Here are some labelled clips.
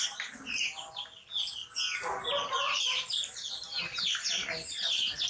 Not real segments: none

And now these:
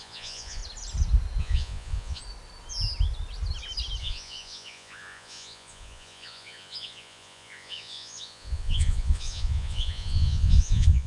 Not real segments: 0.0-0.6 (vocoder, Vocos); 1.4-2.2; 4.0-11.1

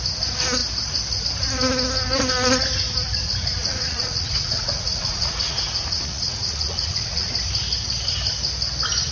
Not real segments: 3.6-7.3 (vocoder, Vocos)

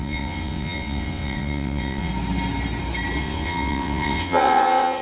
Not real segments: 0.0-2.1 (vocoder, WaveNeXt); 3.2-5.0